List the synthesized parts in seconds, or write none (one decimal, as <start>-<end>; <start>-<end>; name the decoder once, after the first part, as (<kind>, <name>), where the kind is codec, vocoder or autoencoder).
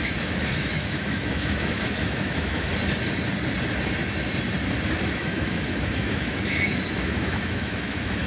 0.0-2.7 (autoencoder, DAC-VAE); 5.2-8.3